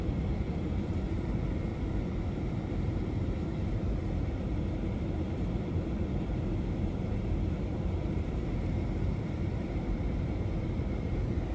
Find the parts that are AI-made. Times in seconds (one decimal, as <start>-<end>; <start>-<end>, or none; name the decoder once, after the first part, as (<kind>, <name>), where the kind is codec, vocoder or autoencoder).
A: 0.0-1.7 (vocoder, BigVGAN v2); 2.5-11.5